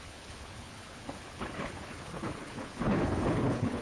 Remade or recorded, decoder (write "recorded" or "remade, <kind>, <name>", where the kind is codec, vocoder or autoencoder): remade, codec, HILCodec